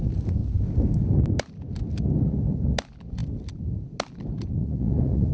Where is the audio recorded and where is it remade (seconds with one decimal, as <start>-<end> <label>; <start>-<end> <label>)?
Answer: 0.0-4.6 recorded; 4.6-5.3 remade